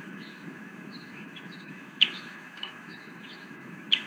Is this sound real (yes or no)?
no